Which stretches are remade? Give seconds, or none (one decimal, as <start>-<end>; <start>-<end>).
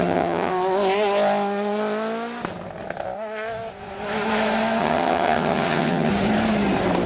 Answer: 0.0-0.5; 4.8-6.1